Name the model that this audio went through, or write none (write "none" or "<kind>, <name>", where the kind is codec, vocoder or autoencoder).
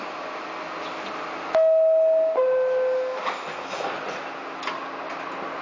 none